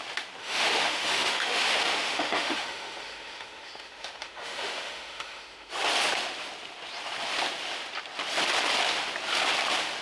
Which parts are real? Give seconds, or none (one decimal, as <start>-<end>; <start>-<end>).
0.0-0.4; 5.7-10.0